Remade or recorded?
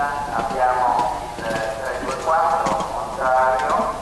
recorded